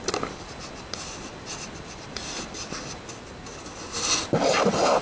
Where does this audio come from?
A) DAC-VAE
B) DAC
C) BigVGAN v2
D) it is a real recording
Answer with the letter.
D